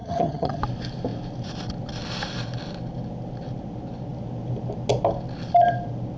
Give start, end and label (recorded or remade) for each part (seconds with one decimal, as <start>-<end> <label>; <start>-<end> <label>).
0.0-0.6 remade; 0.6-6.2 recorded